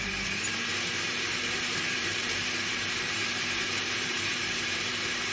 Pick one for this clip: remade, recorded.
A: remade